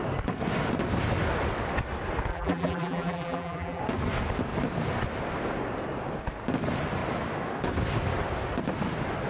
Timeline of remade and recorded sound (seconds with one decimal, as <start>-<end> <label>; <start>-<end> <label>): 0.0-2.3 recorded; 2.3-3.8 remade; 3.8-9.3 recorded